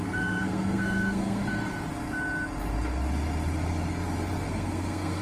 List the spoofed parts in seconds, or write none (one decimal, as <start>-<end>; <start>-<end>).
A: 0.0-1.4; 4.5-5.2